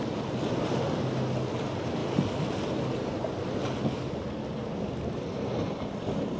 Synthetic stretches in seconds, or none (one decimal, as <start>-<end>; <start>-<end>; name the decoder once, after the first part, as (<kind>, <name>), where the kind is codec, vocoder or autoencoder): none